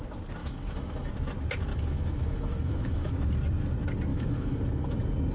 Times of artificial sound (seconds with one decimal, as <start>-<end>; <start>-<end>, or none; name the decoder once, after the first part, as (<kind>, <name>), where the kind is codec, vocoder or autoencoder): 0.4-1.1 (autoencoder, DAC-VAE); 1.7-3.1; 4.1-4.6